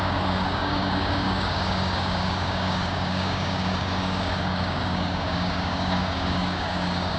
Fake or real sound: fake